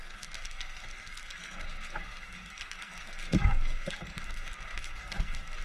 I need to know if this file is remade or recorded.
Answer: remade